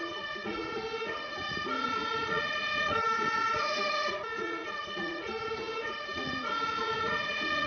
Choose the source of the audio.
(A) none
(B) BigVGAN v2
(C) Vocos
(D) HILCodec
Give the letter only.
C